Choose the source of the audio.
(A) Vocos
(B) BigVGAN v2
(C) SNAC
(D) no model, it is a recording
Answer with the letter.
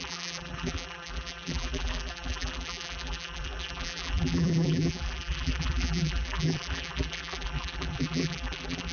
B